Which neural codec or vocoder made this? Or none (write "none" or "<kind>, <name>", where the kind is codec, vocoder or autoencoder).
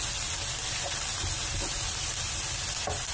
none